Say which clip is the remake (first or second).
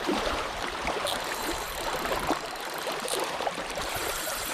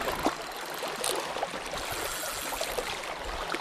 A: first